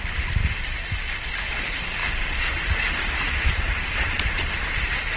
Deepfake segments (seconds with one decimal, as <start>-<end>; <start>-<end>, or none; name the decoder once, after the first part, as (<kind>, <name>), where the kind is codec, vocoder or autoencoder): none

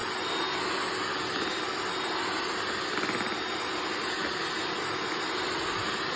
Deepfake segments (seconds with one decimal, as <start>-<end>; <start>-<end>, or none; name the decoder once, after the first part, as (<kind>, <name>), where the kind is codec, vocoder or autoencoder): none

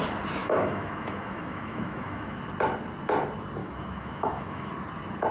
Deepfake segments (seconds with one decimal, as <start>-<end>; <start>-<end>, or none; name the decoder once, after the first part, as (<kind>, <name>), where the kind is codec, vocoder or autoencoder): 0.4-2.4 (autoencoder, DAC-VAE); 3.6-4.7